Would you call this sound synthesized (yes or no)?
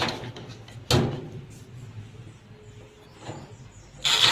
no